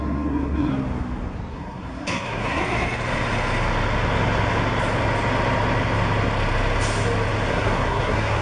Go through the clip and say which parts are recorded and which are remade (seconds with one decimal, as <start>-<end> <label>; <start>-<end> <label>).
0.0-0.7 remade; 0.7-1.5 recorded; 1.5-2.6 remade; 2.6-7.5 recorded; 7.5-8.4 remade